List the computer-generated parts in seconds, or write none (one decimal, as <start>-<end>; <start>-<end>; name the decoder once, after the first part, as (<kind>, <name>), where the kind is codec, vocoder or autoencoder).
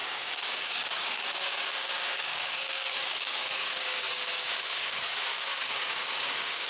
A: 0.0-6.7 (codec, DAC)